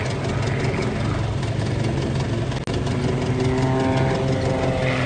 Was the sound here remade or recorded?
recorded